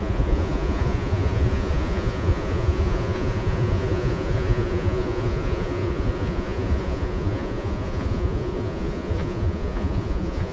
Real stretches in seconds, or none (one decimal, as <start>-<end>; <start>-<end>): none

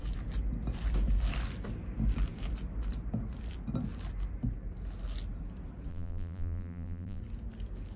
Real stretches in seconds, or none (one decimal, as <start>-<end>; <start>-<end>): 0.0-5.9; 7.2-8.0

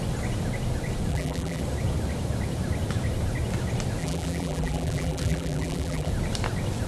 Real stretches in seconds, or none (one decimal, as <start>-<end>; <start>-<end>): 0.0-1.1; 1.6-4.0; 6.1-6.9

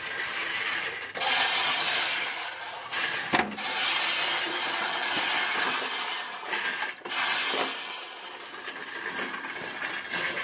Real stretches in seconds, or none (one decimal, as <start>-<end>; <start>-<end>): 0.0-10.4

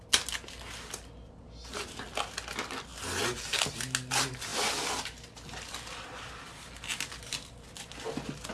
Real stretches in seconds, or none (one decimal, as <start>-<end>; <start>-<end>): 0.0-8.5

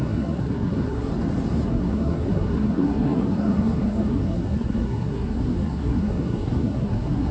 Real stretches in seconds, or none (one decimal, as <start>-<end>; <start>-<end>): 1.1-1.7

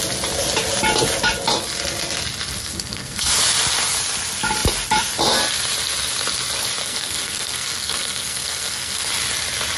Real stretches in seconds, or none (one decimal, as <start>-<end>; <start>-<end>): 0.0-2.6; 3.3-6.8; 9.1-9.8